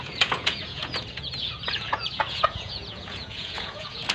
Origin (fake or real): fake